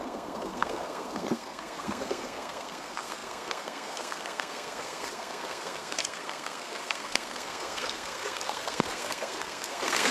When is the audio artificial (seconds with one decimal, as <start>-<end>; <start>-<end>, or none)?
0.0-10.1